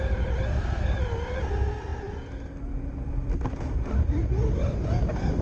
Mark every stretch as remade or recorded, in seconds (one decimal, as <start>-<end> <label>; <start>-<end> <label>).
0.0-5.4 recorded